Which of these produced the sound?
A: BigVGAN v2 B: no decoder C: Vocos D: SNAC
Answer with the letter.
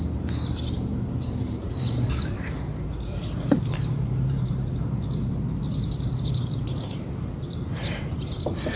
A